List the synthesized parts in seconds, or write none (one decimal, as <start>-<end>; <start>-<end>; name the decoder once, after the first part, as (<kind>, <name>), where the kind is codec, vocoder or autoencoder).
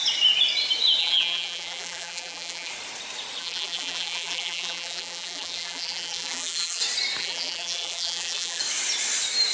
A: 1.0-2.7 (vocoder, BigVGAN v2); 3.4-6.8; 7.2-8.6